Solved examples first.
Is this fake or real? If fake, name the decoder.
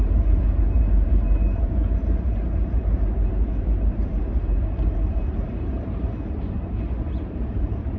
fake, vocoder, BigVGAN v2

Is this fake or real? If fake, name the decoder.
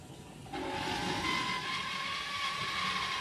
real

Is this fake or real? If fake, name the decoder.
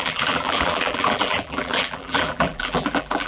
fake, vocoder, BigVGAN v2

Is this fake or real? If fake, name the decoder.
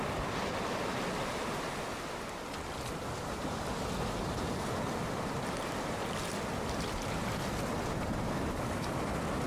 real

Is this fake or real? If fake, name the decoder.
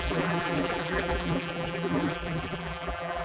fake, vocoder, BigVGAN v2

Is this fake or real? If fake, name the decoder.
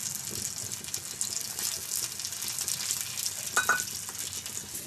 real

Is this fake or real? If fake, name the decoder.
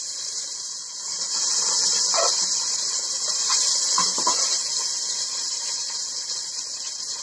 fake, vocoder, BigVGAN v2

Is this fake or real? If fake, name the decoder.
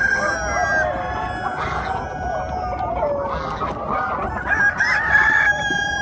real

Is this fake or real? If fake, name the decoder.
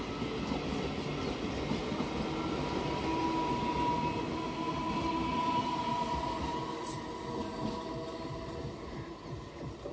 real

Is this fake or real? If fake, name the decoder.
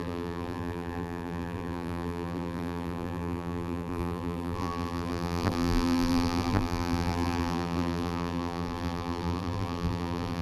fake, vocoder, BigVGAN v2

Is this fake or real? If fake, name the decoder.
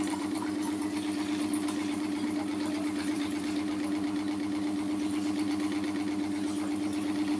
fake, vocoder, BigVGAN v2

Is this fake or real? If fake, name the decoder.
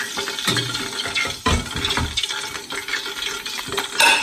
real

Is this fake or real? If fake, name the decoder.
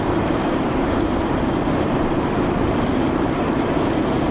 fake, vocoder, BigVGAN v2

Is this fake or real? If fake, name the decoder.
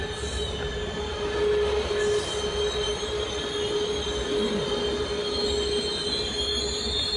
real